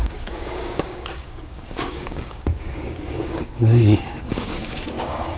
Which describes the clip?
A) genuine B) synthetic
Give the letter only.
B